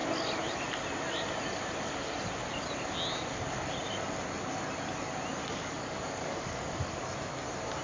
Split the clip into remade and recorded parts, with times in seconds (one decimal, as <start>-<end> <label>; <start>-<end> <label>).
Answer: 0.0-5.3 recorded; 5.3-7.0 remade; 7.0-7.8 recorded